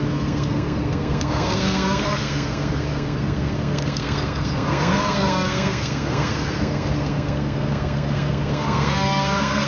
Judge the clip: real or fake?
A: fake